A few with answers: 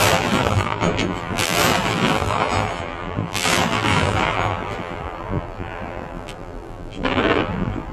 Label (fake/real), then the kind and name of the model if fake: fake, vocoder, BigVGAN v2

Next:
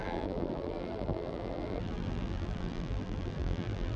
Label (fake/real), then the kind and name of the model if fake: fake, vocoder, BigVGAN v2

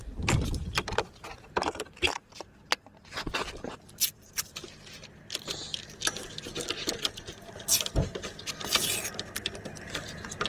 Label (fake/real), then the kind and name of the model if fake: real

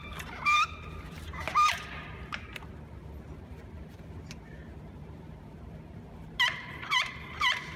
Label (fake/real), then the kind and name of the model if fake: fake, vocoder, BigVGAN v2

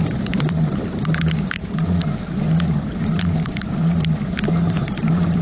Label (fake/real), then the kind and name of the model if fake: fake, vocoder, BigVGAN v2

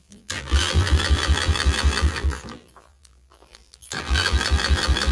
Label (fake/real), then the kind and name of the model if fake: fake, vocoder, BigVGAN v2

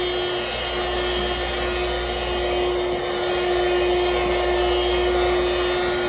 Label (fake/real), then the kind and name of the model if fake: real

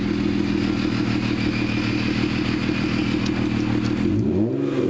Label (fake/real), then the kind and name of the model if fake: real